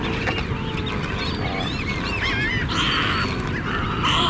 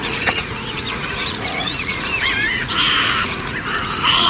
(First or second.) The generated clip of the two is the second